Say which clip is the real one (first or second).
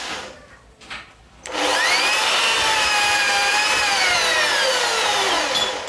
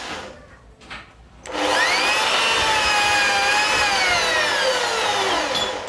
second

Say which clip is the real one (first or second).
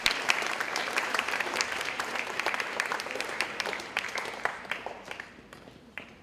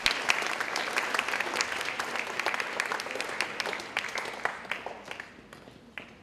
second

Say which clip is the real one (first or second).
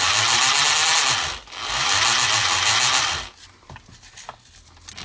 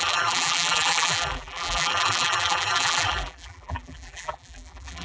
first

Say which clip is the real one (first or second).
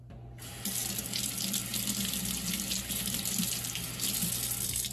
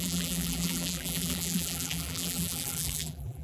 first